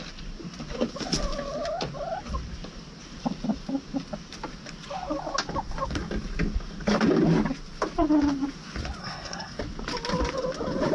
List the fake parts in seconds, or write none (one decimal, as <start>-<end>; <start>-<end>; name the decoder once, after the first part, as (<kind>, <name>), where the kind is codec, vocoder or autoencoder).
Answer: 9.0-9.6 (codec, SNAC)